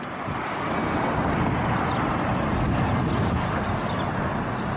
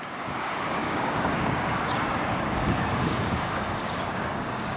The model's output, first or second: second